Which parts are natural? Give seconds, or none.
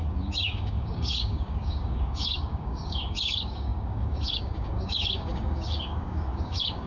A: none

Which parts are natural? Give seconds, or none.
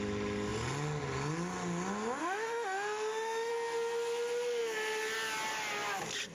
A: 0.0-2.2; 3.5-6.3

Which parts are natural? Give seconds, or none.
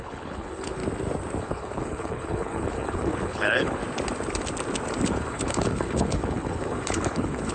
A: 0.8-1.4; 3.8-5.1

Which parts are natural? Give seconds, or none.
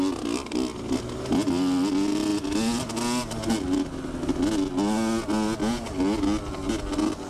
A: 0.0-7.3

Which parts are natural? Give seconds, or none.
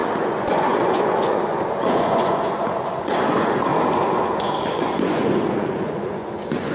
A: 3.7-4.2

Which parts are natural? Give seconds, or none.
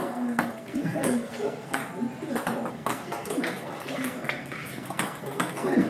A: 1.8-2.7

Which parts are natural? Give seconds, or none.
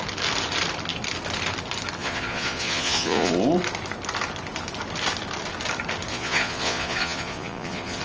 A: 0.0-2.0; 3.3-6.1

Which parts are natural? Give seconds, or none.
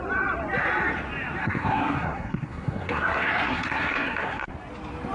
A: 0.0-1.4; 4.5-5.1